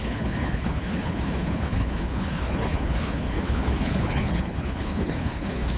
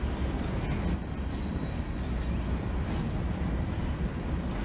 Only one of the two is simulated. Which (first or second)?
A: first